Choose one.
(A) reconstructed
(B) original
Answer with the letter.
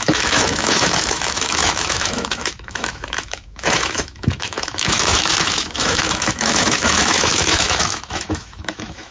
A